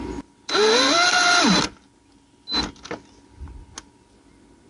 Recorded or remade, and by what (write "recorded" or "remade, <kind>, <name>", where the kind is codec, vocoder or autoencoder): recorded